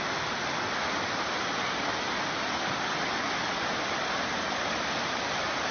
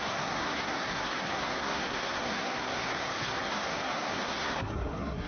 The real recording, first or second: first